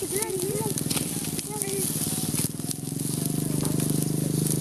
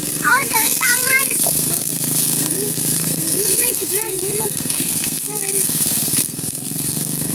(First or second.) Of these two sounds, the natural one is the first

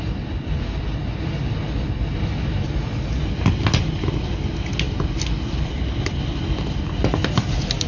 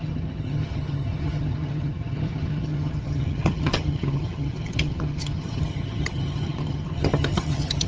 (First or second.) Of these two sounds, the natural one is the first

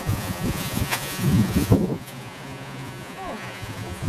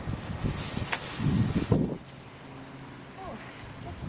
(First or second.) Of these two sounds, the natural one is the second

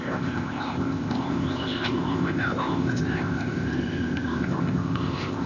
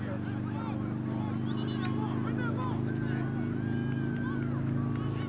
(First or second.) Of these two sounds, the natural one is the second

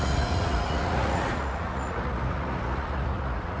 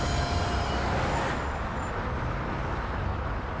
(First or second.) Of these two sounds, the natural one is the second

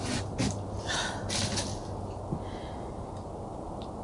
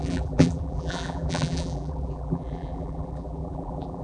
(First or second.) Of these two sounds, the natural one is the first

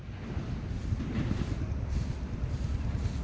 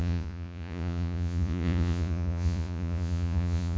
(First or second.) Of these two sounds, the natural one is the first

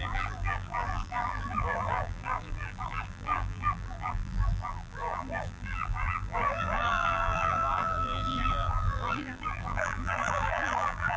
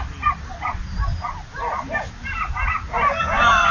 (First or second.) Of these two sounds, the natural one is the second